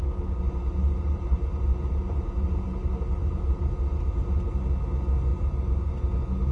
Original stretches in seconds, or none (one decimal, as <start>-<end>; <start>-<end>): 0.0-0.6; 4.5-5.3; 5.9-6.5